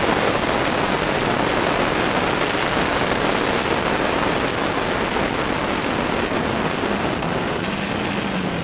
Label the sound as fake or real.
real